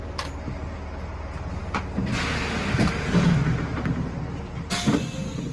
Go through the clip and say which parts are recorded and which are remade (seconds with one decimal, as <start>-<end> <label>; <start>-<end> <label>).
0.0-5.5 recorded